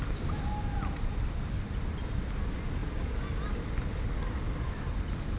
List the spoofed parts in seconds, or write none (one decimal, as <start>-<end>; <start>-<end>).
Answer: none